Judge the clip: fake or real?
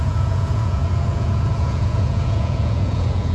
fake